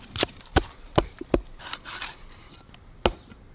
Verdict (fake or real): real